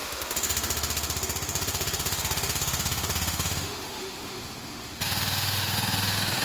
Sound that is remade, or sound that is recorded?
remade